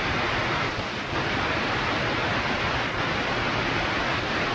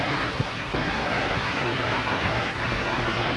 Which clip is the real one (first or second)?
first